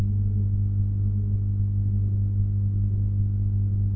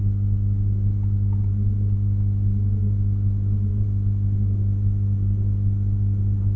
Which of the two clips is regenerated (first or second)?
second